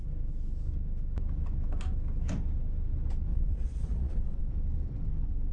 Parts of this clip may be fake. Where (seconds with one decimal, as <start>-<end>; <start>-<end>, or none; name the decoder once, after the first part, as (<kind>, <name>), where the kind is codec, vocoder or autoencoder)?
3.3-4.4 (vocoder, Vocos)